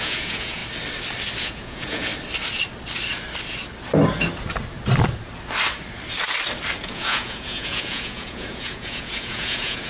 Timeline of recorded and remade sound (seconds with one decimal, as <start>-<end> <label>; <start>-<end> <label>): 0.0-0.6 remade; 0.6-1.4 recorded; 1.4-2.1 remade; 2.1-6.8 recorded; 6.8-9.9 remade